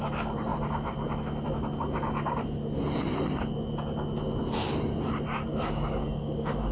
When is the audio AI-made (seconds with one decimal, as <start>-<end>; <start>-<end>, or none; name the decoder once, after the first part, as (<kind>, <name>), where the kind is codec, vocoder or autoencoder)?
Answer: 5.5-6.7 (codec, DAC)